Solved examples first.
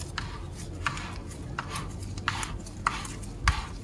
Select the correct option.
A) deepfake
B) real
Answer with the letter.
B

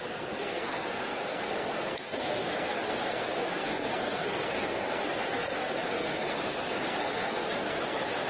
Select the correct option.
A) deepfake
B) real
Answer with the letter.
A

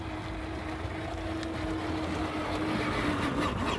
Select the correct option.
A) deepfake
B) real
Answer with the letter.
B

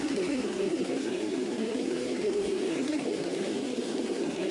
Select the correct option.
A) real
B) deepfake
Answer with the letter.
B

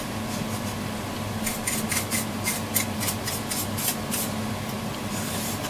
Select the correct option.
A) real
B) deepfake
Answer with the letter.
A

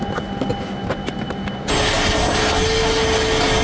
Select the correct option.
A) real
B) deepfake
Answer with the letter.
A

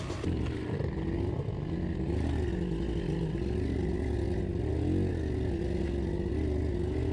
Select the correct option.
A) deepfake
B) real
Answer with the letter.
B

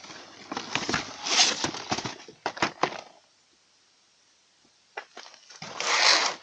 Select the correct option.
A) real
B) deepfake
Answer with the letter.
A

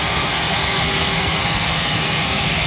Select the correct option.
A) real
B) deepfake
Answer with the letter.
B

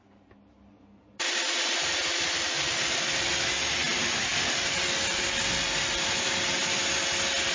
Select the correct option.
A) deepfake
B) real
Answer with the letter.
B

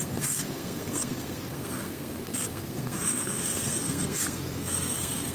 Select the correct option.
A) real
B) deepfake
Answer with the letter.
B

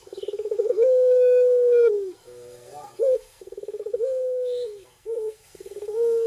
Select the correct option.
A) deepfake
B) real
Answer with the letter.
A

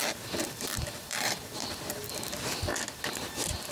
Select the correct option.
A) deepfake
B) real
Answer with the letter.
B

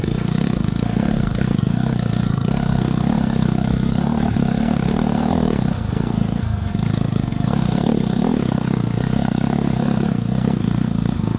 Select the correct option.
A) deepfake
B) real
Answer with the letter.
A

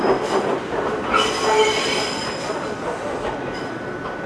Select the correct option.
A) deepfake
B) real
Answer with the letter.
B